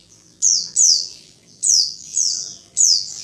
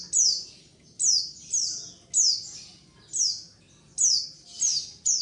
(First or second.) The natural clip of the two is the second